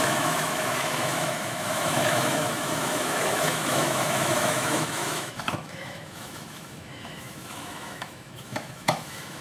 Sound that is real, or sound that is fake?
fake